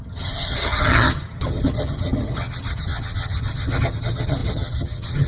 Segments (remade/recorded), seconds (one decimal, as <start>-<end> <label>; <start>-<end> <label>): 0.0-5.3 remade